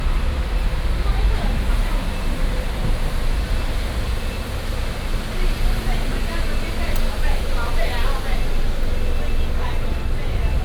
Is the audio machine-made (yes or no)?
no